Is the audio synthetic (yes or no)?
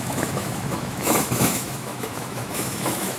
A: yes